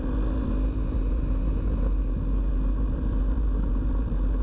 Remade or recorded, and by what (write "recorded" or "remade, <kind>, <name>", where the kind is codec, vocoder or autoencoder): recorded